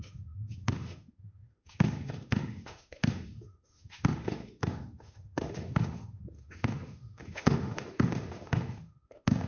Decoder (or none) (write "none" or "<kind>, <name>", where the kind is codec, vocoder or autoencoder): autoencoder, DAC-VAE